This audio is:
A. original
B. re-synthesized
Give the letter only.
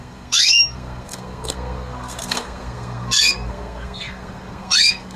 B